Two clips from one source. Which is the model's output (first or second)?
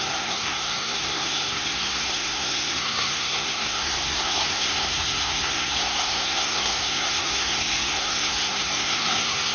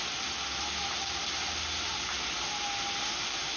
first